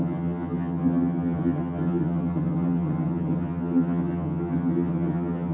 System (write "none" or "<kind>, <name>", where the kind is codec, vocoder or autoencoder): vocoder, HiFi-GAN